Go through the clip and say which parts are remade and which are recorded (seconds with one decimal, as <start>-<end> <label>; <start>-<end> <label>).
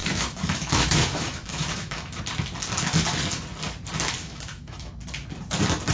0.0-2.2 remade; 2.2-4.2 recorded; 4.2-4.9 remade; 4.9-5.9 recorded